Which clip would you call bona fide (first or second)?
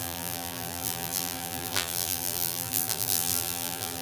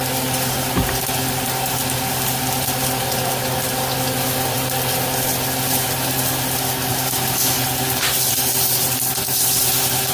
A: second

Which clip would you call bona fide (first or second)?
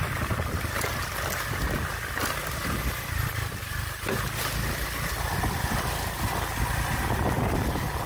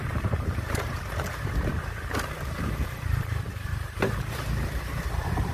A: first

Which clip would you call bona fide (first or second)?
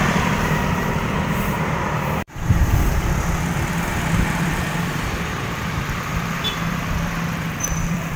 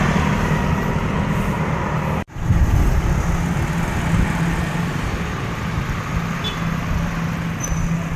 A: second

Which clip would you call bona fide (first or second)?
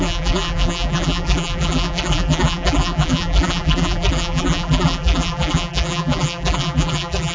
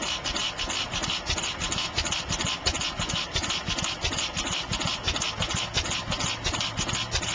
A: second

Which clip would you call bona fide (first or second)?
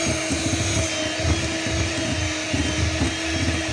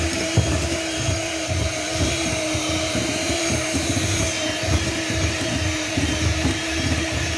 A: first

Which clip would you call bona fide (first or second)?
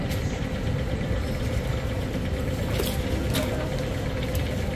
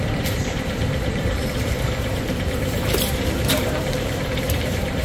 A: first